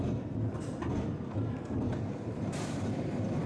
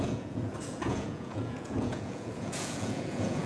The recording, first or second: first